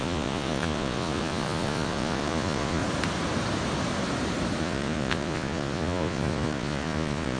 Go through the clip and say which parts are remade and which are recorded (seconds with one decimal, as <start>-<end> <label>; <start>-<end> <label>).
0.0-2.8 remade; 2.8-4.6 recorded; 4.6-7.4 remade